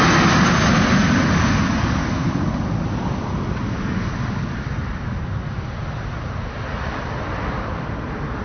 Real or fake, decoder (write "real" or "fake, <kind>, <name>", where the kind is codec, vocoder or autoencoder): real